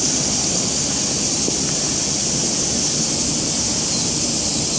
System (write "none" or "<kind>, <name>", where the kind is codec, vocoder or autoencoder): none